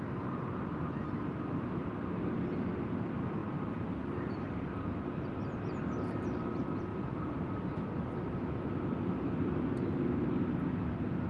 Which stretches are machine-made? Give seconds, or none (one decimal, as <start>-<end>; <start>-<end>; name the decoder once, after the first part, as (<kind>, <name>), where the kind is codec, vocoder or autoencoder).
3.4-5.1 (vocoder, BigVGAN v2); 6.9-7.6

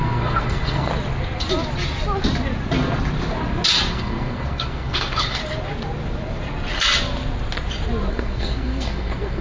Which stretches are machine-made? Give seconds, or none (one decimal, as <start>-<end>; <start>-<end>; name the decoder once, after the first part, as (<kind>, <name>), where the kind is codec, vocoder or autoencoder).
0.0-0.9 (codec, SNAC); 3.9-5.4; 8.1-9.4

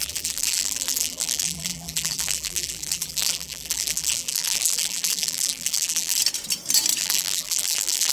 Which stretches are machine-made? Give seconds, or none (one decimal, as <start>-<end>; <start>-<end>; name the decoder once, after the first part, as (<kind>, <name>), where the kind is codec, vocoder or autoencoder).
0.0-6.2 (vocoder, BigVGAN v2); 7.0-8.1